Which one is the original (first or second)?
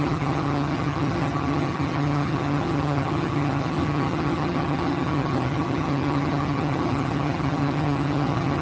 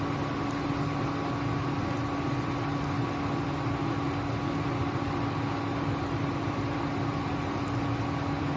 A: second